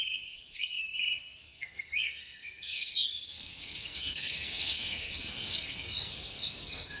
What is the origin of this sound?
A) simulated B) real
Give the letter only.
A